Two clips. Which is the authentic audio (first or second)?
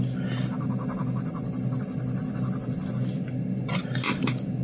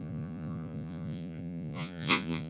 first